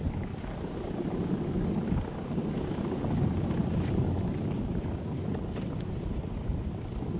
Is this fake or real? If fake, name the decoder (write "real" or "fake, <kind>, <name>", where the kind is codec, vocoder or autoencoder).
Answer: real